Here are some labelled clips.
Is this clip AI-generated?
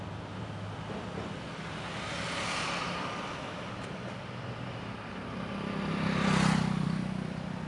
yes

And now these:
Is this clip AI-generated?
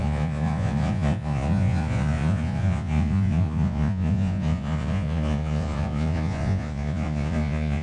yes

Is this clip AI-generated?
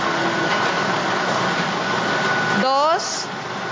no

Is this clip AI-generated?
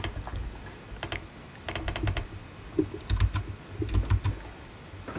no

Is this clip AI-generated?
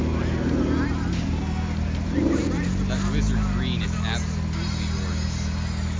no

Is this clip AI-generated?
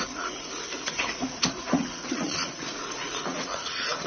yes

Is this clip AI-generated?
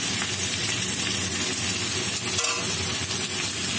no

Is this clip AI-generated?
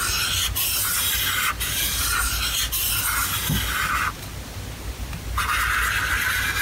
no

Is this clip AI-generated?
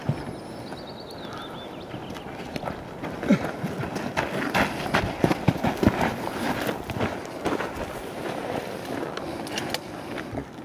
no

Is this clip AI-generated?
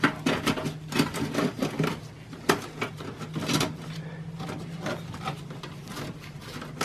no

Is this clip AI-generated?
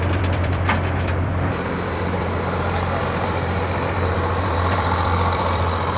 yes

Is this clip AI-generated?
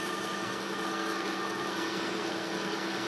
yes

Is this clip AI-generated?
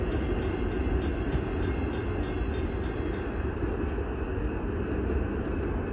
no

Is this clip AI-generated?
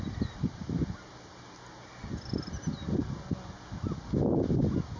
no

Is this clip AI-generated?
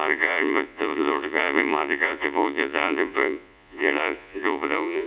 yes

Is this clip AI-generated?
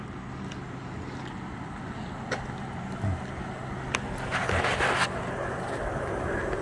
no